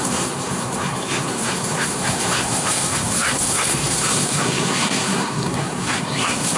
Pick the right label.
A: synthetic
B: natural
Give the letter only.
A